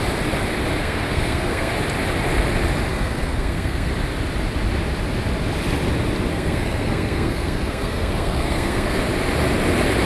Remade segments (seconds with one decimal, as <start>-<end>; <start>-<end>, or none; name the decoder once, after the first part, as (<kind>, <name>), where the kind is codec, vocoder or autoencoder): 0.8-1.7 (codec, SNAC); 2.9-3.9; 6.3-9.0